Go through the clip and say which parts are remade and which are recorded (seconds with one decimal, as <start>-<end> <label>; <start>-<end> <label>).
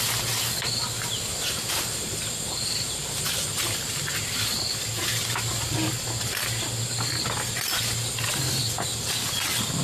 0.0-1.3 recorded; 1.3-4.1 remade; 4.1-9.8 recorded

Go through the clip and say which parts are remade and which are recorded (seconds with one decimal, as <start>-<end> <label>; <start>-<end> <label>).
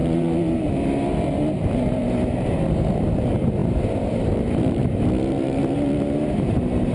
0.0-6.9 remade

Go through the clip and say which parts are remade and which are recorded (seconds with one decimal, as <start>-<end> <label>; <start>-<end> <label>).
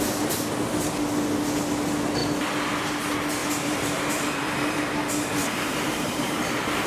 0.0-3.4 recorded; 3.4-4.8 remade; 4.8-5.4 recorded; 5.4-6.5 remade; 6.5-6.9 recorded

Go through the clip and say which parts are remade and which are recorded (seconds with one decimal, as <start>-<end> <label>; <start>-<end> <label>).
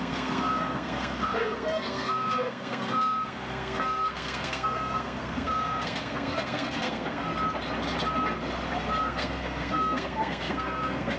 0.0-7.3 remade; 7.3-9.0 recorded; 9.0-11.2 remade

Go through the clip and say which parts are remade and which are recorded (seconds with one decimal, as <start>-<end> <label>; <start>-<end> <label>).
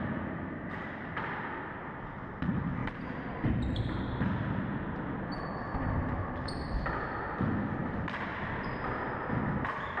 0.0-2.8 recorded; 2.8-4.0 remade; 4.0-10.0 recorded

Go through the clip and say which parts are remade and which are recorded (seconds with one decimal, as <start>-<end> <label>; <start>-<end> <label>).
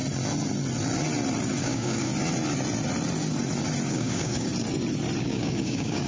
0.0-1.6 recorded; 1.6-2.1 remade; 2.1-3.9 recorded; 3.9-4.5 remade; 4.5-5.2 recorded; 5.2-6.1 remade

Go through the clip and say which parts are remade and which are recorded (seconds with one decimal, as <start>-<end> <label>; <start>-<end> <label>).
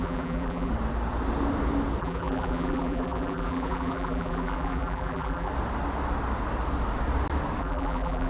0.0-0.7 remade; 0.7-2.0 recorded; 2.0-5.5 remade; 5.5-7.6 recorded; 7.6-8.3 remade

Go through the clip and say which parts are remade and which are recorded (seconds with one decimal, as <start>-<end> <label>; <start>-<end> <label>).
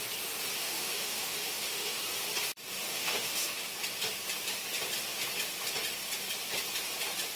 0.0-0.6 recorded; 0.6-2.0 remade; 2.0-2.9 recorded; 2.9-3.6 remade; 3.6-7.4 recorded